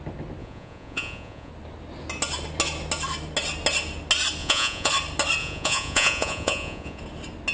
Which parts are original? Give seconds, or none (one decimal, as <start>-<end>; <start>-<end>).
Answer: 0.0-0.4; 1.5-4.4; 4.9-5.4; 7.0-7.5